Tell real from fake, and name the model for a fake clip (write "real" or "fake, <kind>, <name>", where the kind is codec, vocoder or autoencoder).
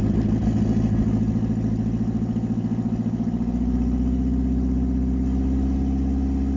real